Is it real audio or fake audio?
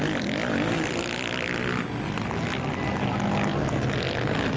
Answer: real